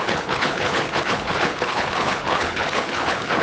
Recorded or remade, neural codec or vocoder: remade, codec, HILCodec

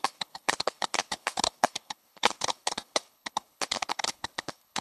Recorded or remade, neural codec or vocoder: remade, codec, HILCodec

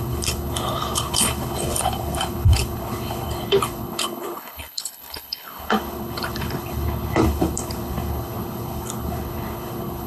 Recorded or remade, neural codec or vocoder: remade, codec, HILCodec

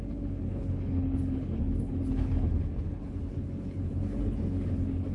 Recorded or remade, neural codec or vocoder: remade, codec, HILCodec